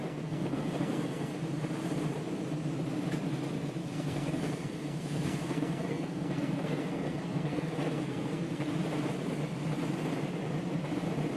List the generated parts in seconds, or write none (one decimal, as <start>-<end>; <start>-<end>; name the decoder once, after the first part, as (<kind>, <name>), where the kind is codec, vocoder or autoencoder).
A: 0.0-1.3 (codec, SNAC); 3.8-8.7